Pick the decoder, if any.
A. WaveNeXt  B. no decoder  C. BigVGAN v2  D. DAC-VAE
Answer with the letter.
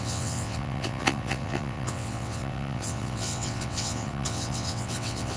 A